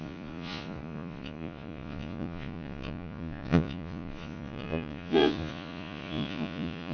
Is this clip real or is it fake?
fake